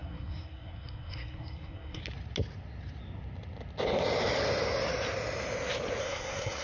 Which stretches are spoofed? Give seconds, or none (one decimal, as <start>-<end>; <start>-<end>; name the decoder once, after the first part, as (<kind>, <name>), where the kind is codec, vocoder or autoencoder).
0.0-2.0 (codec, SNAC); 6.0-6.6